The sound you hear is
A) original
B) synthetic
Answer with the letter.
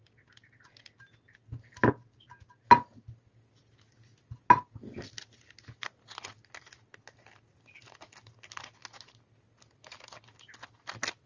A